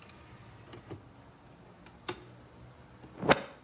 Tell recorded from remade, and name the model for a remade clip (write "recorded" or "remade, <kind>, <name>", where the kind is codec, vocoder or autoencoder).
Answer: recorded